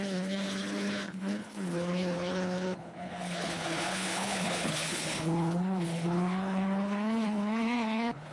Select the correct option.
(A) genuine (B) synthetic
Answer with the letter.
B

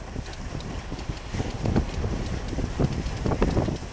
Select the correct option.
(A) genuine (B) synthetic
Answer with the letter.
A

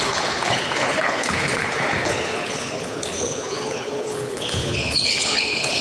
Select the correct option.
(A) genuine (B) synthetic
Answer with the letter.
B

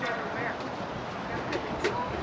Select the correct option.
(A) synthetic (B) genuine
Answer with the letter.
B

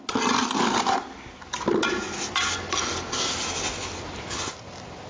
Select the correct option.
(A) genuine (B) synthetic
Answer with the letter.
A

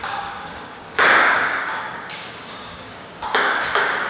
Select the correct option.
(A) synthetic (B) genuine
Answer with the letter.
A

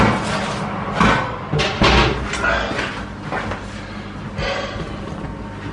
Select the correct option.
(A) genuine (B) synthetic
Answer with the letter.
A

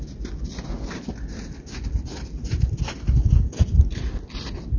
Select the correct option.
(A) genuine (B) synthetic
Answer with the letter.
A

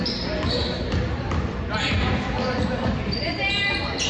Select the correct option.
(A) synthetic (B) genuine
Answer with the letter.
B